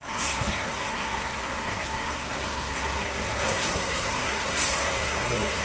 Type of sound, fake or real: fake